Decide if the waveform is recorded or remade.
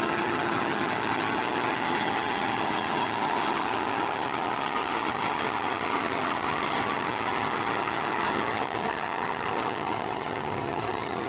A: remade